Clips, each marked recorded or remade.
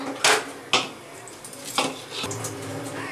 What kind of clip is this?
recorded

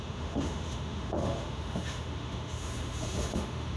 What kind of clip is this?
remade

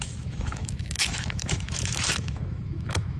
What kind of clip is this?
remade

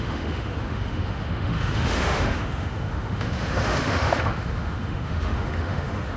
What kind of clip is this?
remade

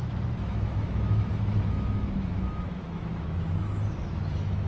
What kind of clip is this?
remade